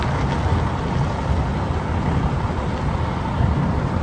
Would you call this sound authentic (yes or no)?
yes